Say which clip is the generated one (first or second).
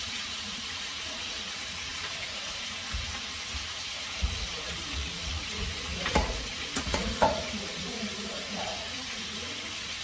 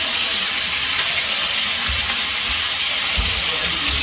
first